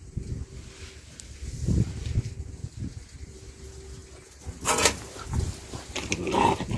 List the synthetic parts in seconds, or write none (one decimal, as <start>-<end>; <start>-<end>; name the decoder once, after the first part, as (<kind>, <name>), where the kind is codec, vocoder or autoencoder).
none